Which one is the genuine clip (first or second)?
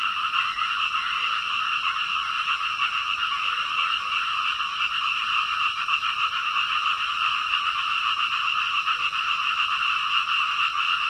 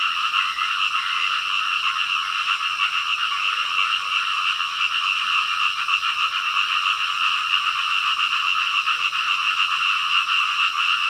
second